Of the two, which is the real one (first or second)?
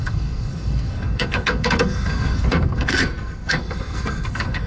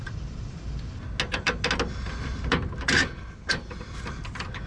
second